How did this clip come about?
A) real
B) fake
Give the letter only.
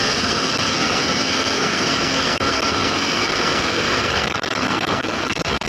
B